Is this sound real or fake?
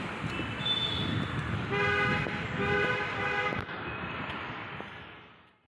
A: real